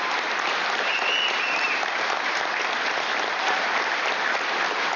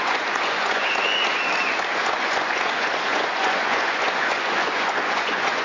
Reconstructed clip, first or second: second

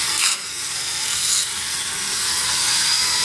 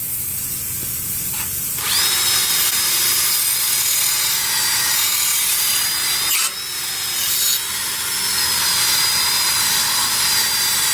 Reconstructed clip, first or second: first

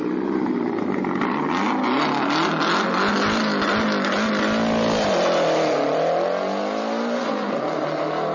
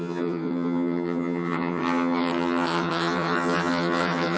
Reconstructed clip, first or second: second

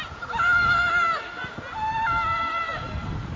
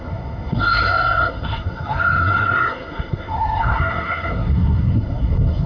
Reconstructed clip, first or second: second